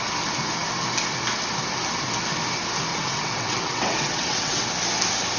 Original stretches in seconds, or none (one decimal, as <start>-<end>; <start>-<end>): 0.0-2.9; 4.6-5.4

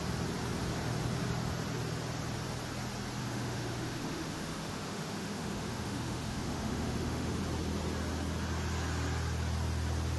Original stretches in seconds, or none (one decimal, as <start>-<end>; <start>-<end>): 0.0-3.2; 7.4-10.2

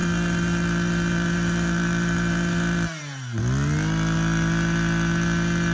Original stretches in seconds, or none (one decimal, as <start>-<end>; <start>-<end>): 3.4-5.7

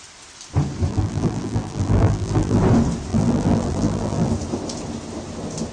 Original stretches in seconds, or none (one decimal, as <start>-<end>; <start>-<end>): 0.0-0.9; 2.6-3.1; 4.3-5.7